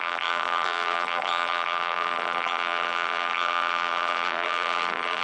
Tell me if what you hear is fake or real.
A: fake